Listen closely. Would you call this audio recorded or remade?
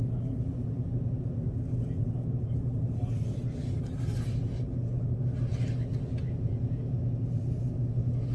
recorded